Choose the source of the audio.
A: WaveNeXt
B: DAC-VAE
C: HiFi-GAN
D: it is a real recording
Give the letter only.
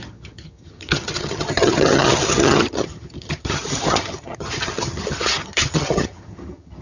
C